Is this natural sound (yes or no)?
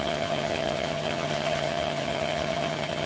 no